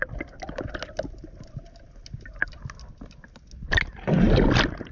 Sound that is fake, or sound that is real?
real